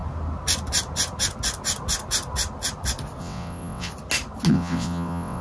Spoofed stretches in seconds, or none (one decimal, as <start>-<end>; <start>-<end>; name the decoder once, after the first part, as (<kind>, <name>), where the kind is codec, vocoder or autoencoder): 3.2-3.9 (vocoder, WaveNeXt); 4.5-5.4